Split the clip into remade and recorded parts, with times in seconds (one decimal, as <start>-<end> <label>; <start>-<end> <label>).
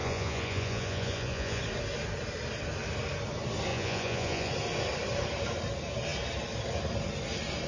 0.0-1.6 remade; 1.6-3.7 recorded; 3.7-4.5 remade; 4.5-7.7 recorded